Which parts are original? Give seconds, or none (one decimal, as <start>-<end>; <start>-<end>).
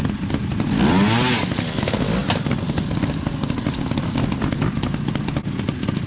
0.0-6.1